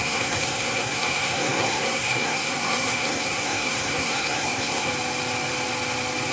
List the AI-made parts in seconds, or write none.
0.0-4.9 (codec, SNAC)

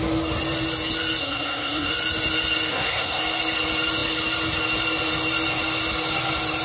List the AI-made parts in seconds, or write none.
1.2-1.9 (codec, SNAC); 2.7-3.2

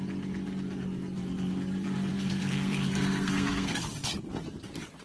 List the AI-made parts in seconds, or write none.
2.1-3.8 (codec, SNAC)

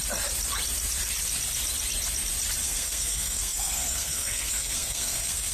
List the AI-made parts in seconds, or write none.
2.6-5.5 (codec, SNAC)